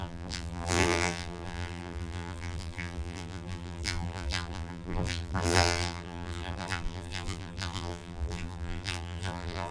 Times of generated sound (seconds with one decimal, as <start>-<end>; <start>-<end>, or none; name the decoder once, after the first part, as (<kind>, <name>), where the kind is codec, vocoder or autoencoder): 0.0-9.7 (vocoder, BigVGAN v2)